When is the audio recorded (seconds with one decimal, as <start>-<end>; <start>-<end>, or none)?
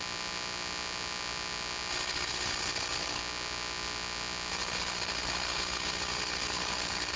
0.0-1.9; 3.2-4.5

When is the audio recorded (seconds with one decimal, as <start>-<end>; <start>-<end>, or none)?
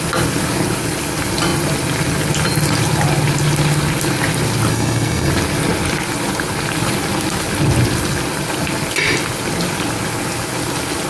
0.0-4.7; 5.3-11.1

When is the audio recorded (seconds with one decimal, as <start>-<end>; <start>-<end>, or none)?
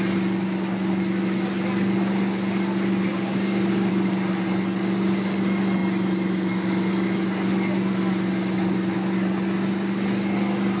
0.0-3.1; 3.9-10.8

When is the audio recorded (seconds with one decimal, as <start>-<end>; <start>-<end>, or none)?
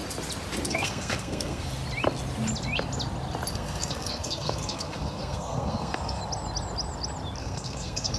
0.0-0.7; 1.8-3.5; 6.2-7.4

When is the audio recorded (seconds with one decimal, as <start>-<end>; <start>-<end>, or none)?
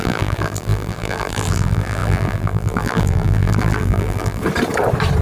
4.4-5.2